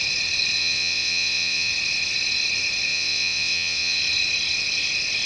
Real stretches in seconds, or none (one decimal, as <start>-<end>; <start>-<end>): 0.0-0.6; 1.7-2.9; 4.0-5.3